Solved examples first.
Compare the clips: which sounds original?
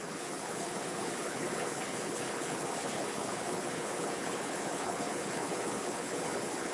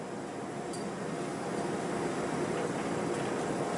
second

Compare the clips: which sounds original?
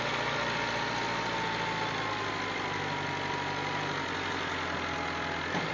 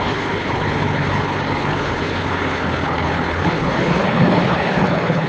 first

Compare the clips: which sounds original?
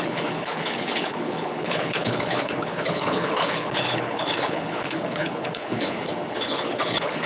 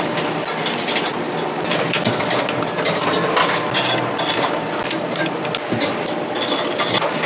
second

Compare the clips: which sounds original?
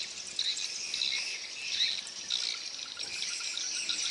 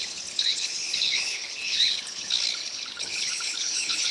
first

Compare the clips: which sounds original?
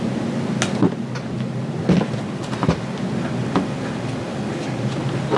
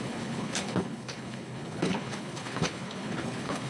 first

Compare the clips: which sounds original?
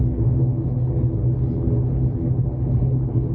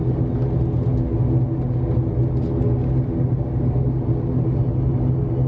second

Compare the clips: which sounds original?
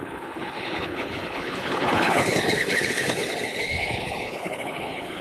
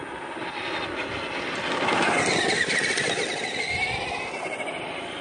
second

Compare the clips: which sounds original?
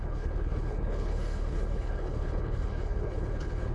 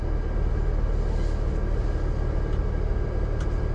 second